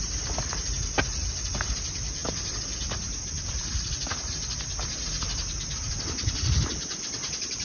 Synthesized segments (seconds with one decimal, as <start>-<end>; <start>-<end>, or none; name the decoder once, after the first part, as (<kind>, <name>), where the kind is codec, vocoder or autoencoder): none